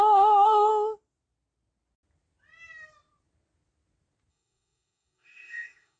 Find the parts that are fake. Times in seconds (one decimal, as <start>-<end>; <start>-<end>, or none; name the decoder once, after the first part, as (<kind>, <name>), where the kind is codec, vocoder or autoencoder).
0.0-0.7 (codec, DAC); 4.3-6.0